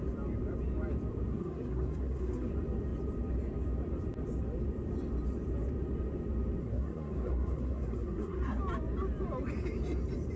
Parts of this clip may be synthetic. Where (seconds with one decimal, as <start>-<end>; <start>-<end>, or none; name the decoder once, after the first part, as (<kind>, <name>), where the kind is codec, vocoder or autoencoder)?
1.3-2.5 (codec, SNAC); 6.6-8.6